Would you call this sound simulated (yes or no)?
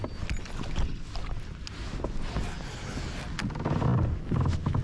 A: no